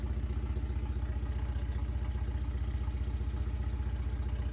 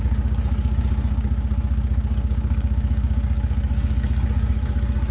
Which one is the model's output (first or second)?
second